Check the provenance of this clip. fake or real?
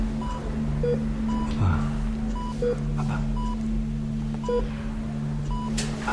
real